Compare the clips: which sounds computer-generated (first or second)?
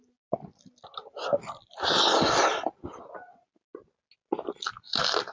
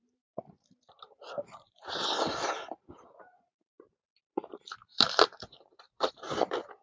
second